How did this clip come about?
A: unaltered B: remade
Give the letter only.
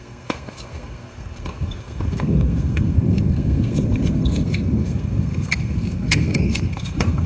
B